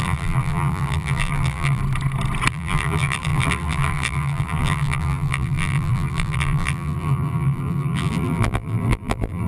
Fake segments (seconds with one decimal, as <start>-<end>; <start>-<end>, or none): 0.0-1.8; 2.5-9.5